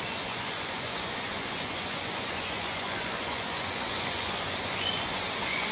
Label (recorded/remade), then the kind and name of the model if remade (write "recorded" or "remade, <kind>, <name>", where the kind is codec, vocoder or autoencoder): remade, vocoder, Vocos